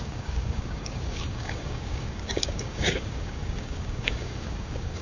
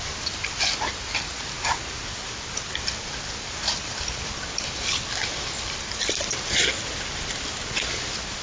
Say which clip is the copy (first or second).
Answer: first